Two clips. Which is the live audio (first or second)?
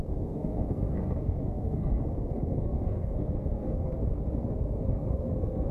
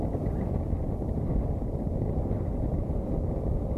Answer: second